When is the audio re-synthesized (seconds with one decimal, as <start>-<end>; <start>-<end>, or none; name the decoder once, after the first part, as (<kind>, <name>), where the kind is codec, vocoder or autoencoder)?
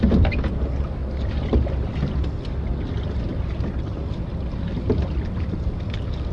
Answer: 1.0-2.4 (vocoder, BigVGAN v2); 4.5-5.7